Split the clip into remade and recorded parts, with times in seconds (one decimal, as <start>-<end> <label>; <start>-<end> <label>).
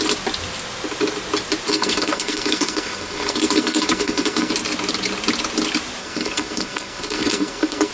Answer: 0.0-1.7 recorded; 1.7-4.5 remade; 4.5-6.0 recorded; 6.0-7.9 remade